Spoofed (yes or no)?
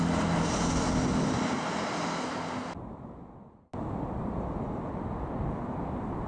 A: no